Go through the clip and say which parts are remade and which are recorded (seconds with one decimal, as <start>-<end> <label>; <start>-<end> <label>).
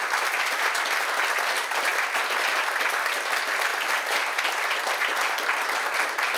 0.0-6.4 recorded